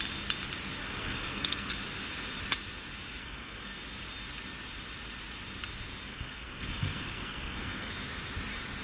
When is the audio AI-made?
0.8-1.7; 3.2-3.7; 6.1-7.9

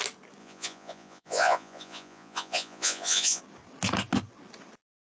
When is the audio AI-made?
0.4-3.4

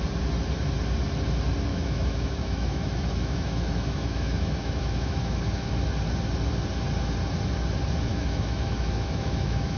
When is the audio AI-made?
1.7-5.7; 8.1-9.8

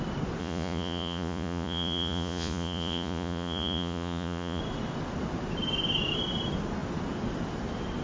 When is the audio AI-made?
0.4-4.6

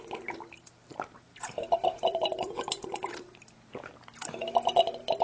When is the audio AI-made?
0.9-4.0

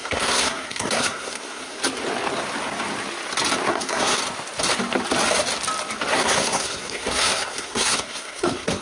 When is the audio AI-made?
0.0-1.8; 3.7-4.2; 6.1-8.8